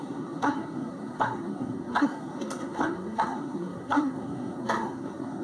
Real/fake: fake